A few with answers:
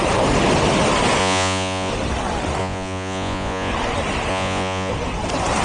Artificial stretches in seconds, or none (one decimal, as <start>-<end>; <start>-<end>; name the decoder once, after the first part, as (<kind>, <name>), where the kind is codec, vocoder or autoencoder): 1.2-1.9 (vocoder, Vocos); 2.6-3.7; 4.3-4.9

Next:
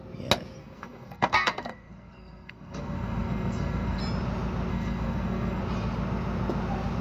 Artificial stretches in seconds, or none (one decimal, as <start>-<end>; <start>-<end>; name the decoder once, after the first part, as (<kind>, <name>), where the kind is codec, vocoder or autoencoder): 0.6-4.0 (codec, SNAC); 4.7-5.6

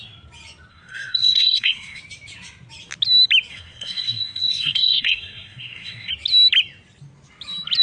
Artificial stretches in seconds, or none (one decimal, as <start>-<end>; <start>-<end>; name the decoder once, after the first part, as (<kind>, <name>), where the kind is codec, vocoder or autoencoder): 0.7-2.0 (codec, SNAC); 3.5-6.1